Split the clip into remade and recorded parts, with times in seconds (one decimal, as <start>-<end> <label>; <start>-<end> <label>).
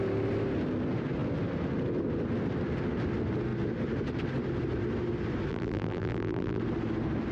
0.0-5.5 recorded; 5.5-6.6 remade; 6.6-7.3 recorded